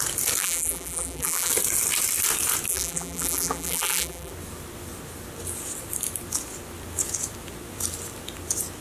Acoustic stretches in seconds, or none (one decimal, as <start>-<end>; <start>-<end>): 0.0-0.4; 1.5-2.7; 4.3-8.8

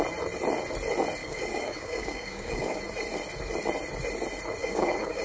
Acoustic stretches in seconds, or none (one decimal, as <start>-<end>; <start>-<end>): 0.0-1.2; 2.8-4.6

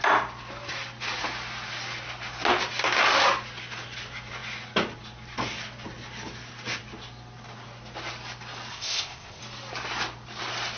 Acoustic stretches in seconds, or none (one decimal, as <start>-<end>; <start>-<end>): 0.0-8.7; 9.4-10.8

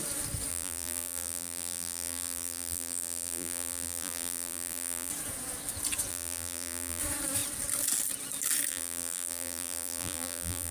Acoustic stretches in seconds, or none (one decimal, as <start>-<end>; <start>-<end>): 0.0-0.5; 5.1-6.1; 7.0-8.7

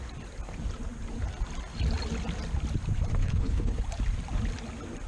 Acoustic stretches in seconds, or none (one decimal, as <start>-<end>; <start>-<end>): 0.0-3.2; 3.8-5.1